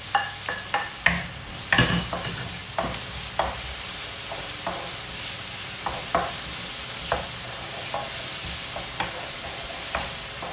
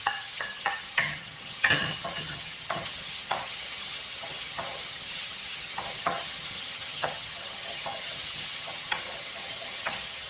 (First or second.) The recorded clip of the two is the first